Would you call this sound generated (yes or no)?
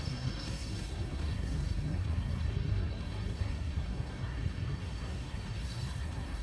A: yes